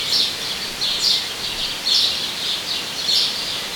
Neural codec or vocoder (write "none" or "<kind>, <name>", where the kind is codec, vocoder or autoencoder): none